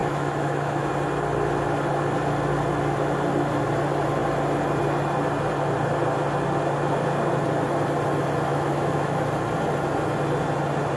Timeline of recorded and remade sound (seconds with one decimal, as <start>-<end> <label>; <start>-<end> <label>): 0.0-0.9 remade; 0.9-8.5 recorded; 8.5-9.2 remade; 9.2-11.0 recorded